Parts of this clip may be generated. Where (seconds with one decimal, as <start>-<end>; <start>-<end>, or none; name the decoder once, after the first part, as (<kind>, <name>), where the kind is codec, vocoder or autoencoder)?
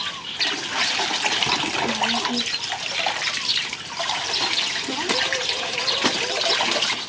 0.7-1.8 (vocoder, BigVGAN v2); 3.5-5.8